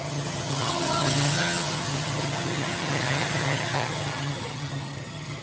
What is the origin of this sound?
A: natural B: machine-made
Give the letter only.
B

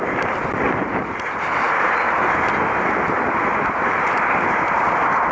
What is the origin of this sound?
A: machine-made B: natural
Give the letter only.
B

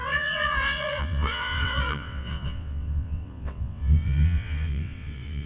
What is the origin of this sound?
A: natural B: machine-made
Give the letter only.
B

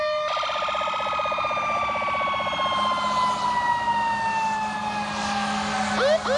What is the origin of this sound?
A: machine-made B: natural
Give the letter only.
B